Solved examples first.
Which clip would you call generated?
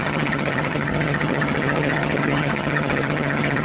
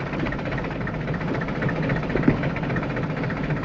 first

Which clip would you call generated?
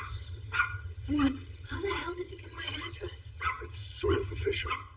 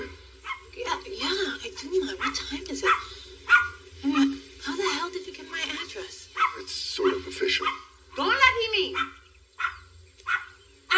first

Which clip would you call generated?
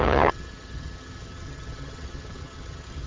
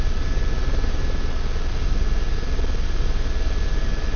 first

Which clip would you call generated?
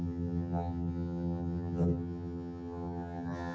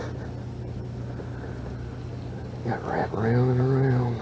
first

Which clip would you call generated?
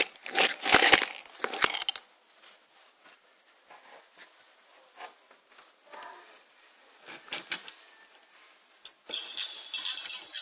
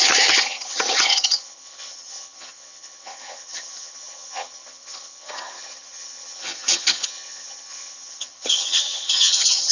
second